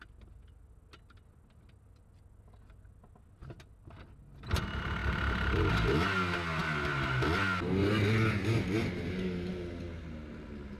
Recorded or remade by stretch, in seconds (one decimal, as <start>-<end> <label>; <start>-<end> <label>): 0.0-5.0 recorded; 5.0-5.7 remade; 5.7-10.8 recorded